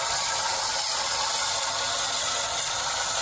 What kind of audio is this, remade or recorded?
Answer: recorded